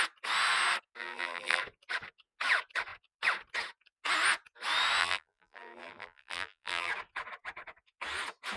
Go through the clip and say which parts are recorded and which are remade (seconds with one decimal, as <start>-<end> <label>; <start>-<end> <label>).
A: 0.0-1.0 recorded; 1.0-1.6 remade; 1.6-5.0 recorded; 5.0-6.9 remade; 6.9-8.6 recorded